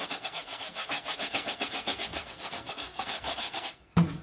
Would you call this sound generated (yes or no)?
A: yes